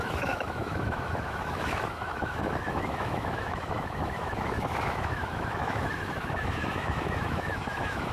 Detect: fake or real fake